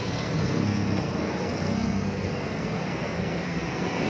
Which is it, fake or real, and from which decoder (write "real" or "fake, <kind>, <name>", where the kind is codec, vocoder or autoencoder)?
fake, codec, SNAC